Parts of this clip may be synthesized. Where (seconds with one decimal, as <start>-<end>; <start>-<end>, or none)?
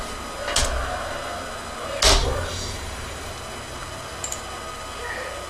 2.2-3.3